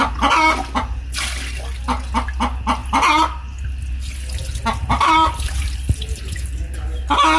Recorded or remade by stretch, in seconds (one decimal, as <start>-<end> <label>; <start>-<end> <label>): 0.0-4.7 recorded; 4.7-6.2 remade; 6.2-7.4 recorded